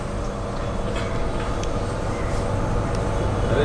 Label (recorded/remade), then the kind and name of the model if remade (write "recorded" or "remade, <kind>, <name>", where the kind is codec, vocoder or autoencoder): recorded